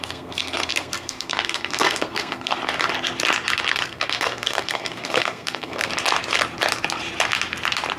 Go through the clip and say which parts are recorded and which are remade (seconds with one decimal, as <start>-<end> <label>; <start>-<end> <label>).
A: 0.0-2.6 remade; 2.6-3.7 recorded; 3.7-5.9 remade; 5.9-8.0 recorded